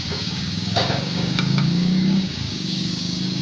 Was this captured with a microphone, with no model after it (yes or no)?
no